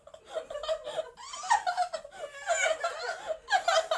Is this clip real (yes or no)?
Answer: yes